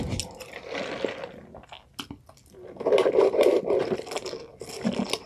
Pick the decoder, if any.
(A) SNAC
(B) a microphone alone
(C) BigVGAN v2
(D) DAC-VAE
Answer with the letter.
B